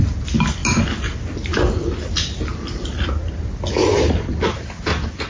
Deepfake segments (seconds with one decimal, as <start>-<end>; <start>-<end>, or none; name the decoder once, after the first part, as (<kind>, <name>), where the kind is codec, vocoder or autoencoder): none